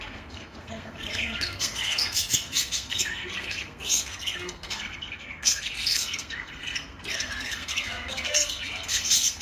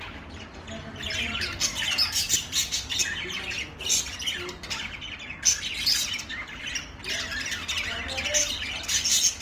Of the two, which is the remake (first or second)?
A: first